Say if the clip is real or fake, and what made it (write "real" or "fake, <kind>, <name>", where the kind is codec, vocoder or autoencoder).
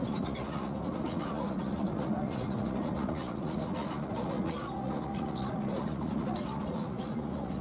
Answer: fake, vocoder, Vocos